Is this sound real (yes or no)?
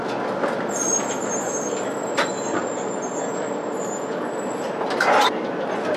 yes